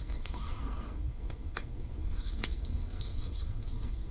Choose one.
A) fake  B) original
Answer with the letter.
A